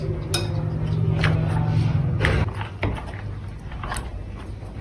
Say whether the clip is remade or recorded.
recorded